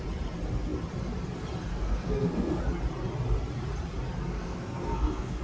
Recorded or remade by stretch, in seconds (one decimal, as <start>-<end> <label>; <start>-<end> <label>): 0.0-1.7 recorded; 1.7-2.6 remade; 2.6-4.3 recorded; 4.3-5.4 remade